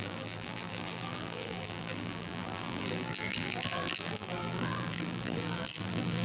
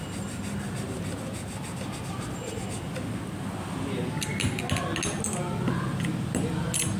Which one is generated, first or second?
first